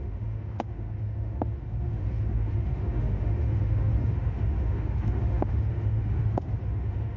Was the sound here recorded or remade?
remade